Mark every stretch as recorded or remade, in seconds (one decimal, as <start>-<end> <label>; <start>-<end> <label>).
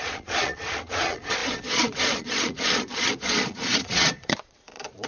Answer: 0.0-5.1 remade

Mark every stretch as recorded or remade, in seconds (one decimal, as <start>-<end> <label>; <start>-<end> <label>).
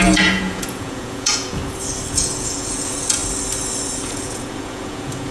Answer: 0.0-1.6 remade; 1.6-2.1 recorded; 2.1-3.2 remade; 3.2-4.0 recorded; 4.0-5.3 remade